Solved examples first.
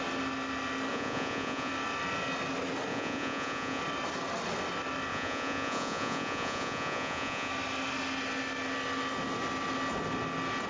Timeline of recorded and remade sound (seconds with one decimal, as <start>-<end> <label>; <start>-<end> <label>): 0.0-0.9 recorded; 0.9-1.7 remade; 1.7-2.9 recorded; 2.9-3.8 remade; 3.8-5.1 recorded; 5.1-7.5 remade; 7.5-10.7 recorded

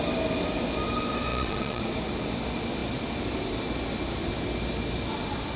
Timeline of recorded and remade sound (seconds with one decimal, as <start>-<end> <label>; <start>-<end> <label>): 0.0-1.3 recorded; 1.3-1.8 remade; 1.8-5.6 recorded

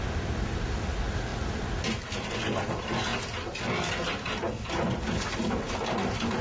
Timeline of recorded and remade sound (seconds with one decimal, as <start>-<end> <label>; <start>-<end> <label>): 0.0-6.4 recorded